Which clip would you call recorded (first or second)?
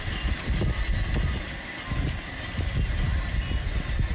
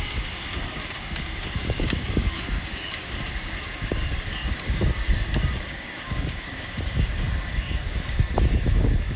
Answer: first